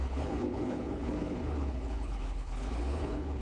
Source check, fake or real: fake